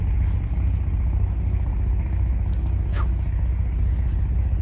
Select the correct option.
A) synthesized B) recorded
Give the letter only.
B